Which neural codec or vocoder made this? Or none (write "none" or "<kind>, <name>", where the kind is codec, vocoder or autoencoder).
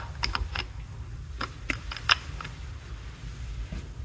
none